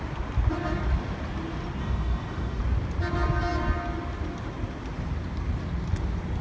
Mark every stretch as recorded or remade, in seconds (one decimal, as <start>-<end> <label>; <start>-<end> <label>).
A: 0.0-1.8 recorded; 1.8-2.6 remade; 2.6-6.4 recorded